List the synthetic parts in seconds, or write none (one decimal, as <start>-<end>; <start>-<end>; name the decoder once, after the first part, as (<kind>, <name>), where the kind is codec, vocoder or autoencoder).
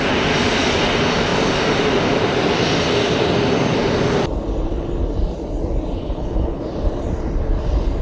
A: 6.0-6.6 (codec, HILCodec)